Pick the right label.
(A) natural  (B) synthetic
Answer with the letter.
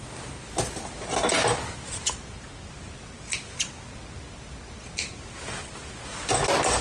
A